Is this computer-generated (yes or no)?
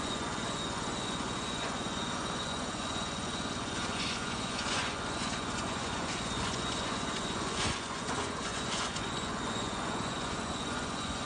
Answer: yes